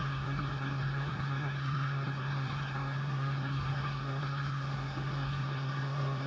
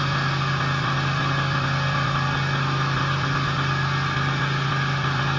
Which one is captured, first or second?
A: second